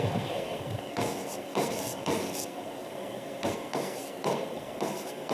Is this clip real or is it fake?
fake